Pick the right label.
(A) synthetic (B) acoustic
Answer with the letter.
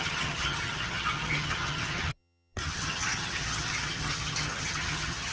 A